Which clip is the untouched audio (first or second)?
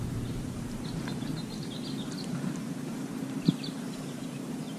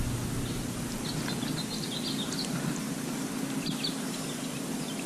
second